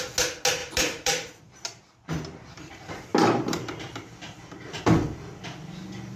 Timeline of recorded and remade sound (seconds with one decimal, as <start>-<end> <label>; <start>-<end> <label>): 0.0-0.6 recorded; 0.6-1.4 remade; 1.4-3.1 recorded; 3.1-4.8 remade; 4.8-6.2 recorded